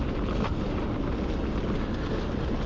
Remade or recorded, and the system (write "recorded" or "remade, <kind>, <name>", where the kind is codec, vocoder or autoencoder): recorded